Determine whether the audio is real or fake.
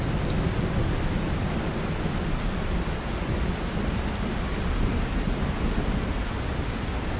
real